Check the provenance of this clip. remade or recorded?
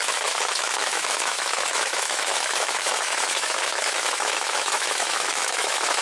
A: remade